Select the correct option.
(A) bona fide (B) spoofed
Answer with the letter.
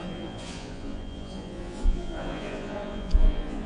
B